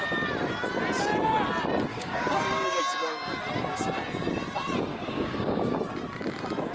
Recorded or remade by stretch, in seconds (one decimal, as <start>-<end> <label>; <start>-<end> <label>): 0.0-1.9 recorded; 1.9-2.8 remade; 2.8-4.9 recorded; 4.9-5.8 remade; 5.8-6.7 recorded